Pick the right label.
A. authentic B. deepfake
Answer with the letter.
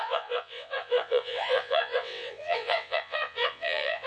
B